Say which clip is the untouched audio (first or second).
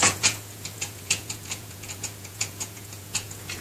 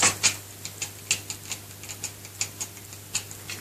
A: second